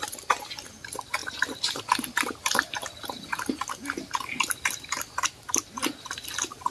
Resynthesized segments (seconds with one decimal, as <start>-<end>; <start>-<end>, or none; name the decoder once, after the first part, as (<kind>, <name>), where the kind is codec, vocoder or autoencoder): none